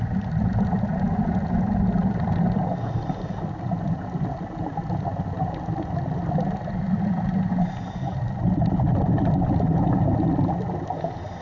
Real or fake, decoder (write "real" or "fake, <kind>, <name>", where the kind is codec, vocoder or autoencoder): real